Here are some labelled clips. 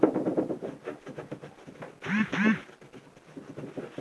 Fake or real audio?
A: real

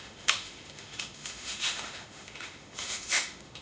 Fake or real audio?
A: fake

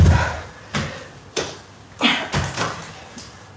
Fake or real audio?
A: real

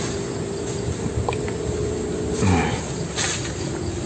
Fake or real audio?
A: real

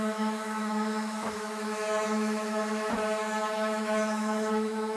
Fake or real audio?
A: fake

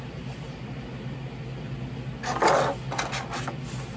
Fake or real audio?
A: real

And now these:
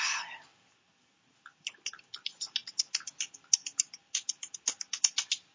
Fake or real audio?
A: real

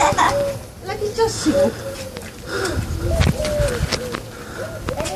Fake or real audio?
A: real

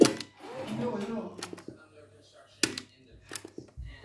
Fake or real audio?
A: real